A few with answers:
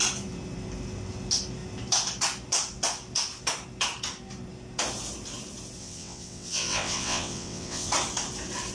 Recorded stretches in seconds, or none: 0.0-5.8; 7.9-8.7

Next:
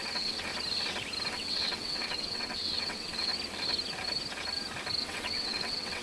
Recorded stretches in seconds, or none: 0.5-1.3; 3.3-5.0

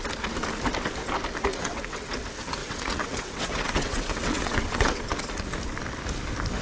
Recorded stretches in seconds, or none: 0.0-1.5; 2.2-2.6; 5.2-6.6

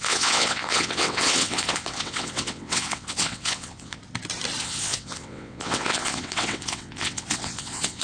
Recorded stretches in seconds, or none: 4.0-4.6

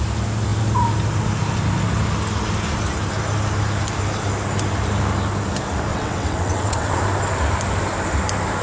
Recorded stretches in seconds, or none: 0.0-5.9; 7.0-8.6